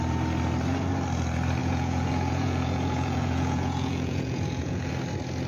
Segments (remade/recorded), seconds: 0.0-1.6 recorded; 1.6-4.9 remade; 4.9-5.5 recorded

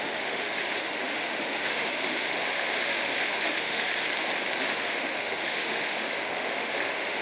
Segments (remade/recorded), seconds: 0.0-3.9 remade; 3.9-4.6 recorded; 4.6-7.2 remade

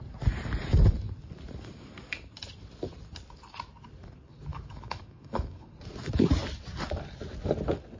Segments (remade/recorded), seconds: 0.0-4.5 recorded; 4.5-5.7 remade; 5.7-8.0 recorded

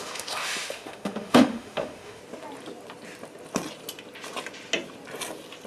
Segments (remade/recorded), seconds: 0.0-2.2 remade; 2.2-5.7 recorded

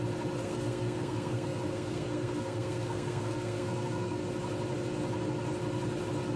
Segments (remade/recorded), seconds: 0.0-0.4 recorded; 0.4-4.2 remade; 4.2-6.4 recorded